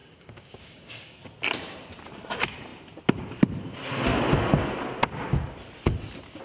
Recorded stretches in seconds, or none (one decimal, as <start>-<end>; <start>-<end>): 1.2-6.4